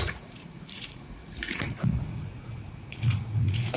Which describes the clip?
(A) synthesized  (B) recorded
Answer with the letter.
A